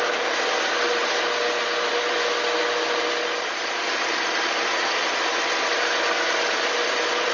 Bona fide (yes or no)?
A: yes